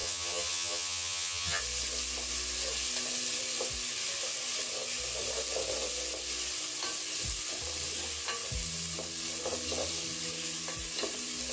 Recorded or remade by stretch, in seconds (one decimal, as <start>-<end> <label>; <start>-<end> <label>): 0.0-1.6 remade; 1.6-11.5 recorded